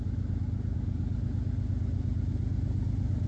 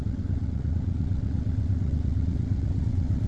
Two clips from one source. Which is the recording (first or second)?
first